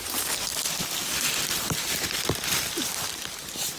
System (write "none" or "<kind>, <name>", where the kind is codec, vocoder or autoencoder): vocoder, BigVGAN v2